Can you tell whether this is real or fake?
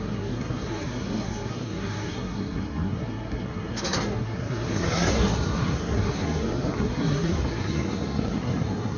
fake